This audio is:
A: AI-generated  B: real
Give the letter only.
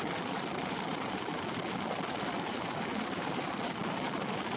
A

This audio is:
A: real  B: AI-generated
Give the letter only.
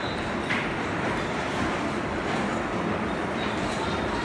B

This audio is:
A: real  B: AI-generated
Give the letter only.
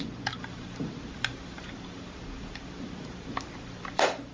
B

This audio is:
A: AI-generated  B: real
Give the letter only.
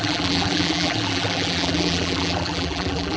A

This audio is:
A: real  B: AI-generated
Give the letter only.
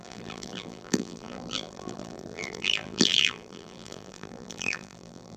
B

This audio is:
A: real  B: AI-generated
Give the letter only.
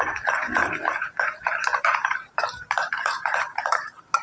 B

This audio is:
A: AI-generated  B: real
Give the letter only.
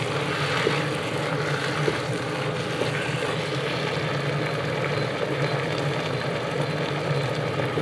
B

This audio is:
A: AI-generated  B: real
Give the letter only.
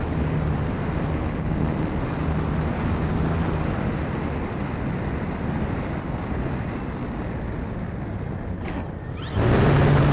B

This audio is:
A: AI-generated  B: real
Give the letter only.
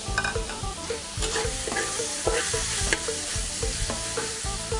A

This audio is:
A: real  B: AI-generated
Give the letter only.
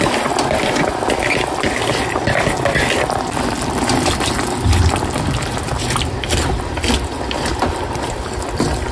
B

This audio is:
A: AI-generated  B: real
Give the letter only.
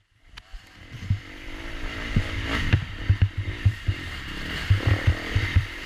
A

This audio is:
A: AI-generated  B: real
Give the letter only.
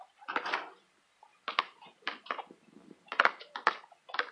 B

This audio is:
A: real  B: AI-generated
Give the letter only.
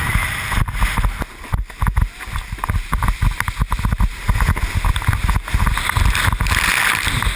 A